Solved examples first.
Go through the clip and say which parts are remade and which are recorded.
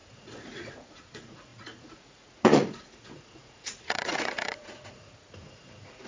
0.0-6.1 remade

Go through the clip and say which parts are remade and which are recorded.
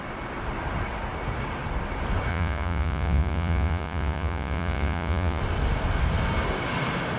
0.0-2.3 recorded; 2.3-5.4 remade; 5.4-7.2 recorded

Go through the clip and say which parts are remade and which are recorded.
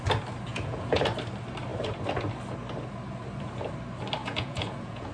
0.0-0.5 recorded; 0.5-1.0 remade; 1.0-4.2 recorded; 4.2-5.1 remade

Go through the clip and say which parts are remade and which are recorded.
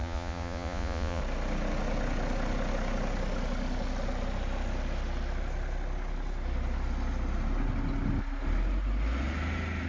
0.0-1.2 remade; 1.2-9.9 recorded